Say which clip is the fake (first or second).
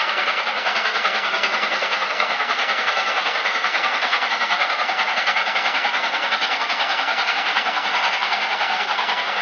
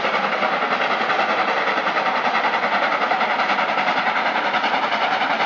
first